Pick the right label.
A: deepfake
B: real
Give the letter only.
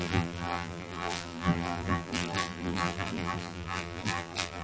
A